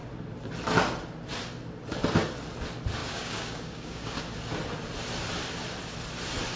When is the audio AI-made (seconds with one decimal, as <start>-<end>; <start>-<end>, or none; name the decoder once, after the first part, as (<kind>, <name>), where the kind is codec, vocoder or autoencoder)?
3.0-4.2 (codec, DAC)